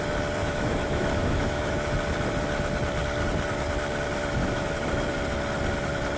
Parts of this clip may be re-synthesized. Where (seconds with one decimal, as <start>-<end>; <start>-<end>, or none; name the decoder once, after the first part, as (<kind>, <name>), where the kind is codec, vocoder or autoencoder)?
0.4-1.9 (autoencoder, DAC-VAE); 4.4-4.9